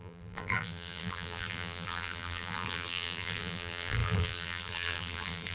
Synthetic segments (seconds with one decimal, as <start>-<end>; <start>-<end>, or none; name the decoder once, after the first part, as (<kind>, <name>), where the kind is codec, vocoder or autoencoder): 0.0-5.5 (vocoder, BigVGAN v2)